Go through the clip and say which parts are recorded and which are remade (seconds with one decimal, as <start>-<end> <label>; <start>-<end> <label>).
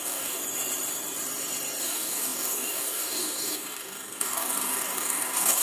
0.0-0.4 remade; 0.4-1.8 recorded; 1.8-5.6 remade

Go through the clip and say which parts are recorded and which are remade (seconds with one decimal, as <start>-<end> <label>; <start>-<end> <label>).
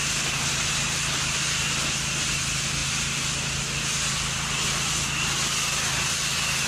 0.0-6.7 recorded